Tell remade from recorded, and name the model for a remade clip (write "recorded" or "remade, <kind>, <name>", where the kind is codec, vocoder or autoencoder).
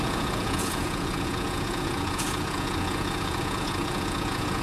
remade, vocoder, Vocos